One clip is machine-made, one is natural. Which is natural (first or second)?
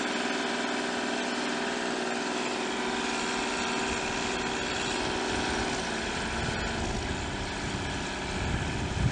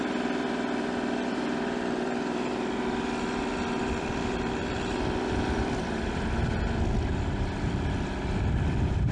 first